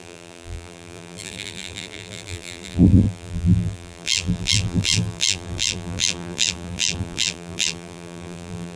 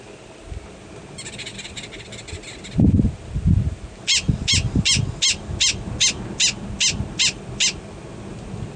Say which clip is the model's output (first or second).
first